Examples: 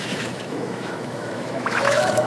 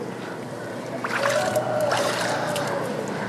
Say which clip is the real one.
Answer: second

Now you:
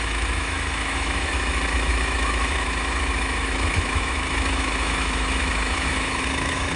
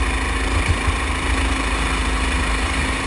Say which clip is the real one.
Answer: second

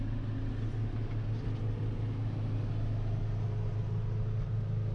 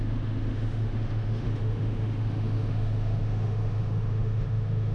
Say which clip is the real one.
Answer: first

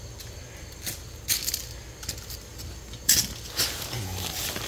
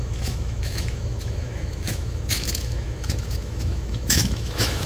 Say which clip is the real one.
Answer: first